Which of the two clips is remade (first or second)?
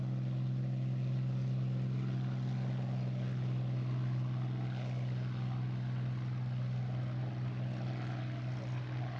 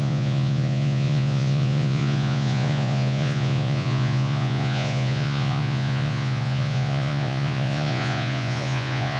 second